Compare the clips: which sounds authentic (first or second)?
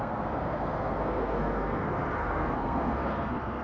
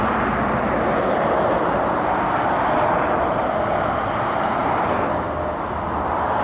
second